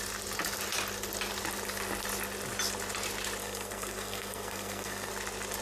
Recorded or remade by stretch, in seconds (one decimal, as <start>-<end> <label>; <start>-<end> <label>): 0.0-3.4 recorded; 3.4-5.1 remade; 5.1-5.6 recorded

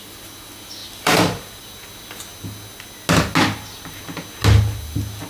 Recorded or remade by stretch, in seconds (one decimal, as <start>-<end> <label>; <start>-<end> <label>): 0.0-0.8 recorded; 0.8-1.6 remade; 1.6-5.3 recorded

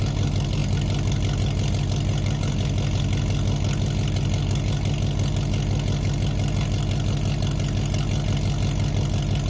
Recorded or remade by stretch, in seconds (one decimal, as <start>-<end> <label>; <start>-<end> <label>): 0.0-9.5 recorded

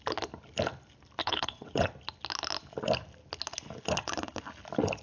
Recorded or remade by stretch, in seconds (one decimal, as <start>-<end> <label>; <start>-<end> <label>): 0.0-1.2 recorded; 1.2-1.9 remade; 1.9-5.0 recorded

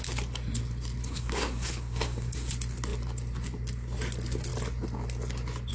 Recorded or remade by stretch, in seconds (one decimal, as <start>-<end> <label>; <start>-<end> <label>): 0.0-1.0 recorded; 1.0-2.5 remade; 2.5-5.7 recorded

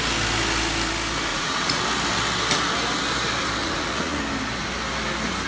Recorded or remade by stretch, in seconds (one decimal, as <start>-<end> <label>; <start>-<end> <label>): 0.0-1.3 recorded; 1.3-1.8 remade; 1.8-3.6 recorded; 3.6-4.2 remade; 4.2-5.5 recorded

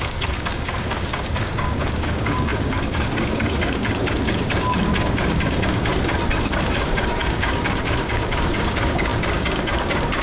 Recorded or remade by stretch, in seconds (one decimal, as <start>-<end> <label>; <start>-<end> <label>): 0.0-5.9 remade; 5.9-6.4 recorded; 6.4-10.2 remade

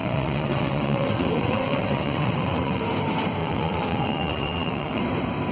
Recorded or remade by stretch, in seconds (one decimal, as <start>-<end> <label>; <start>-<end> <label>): 0.0-2.8 remade; 2.8-3.4 recorded; 3.4-5.0 remade; 5.0-5.5 recorded